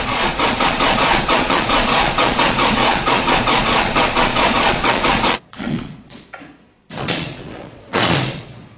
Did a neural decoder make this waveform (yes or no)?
yes